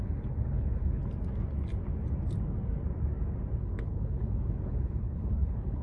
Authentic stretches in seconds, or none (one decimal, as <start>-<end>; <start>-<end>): 1.0-3.6